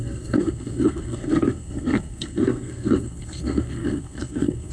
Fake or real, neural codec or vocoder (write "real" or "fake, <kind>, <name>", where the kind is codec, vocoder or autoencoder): fake, codec, SNAC